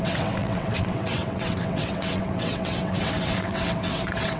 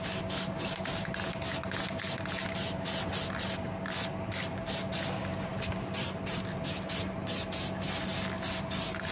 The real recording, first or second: second